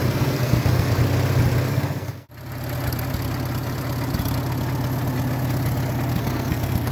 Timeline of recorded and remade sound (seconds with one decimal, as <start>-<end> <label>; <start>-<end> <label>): 0.0-1.0 remade; 1.0-1.7 recorded; 1.7-2.3 remade; 2.3-6.1 recorded; 6.1-6.9 remade